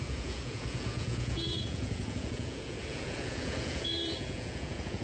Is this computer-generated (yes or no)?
yes